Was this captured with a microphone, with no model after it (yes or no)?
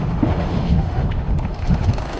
no